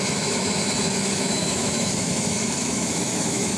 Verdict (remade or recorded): remade